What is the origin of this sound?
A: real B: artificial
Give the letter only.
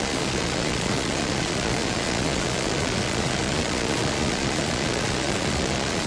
B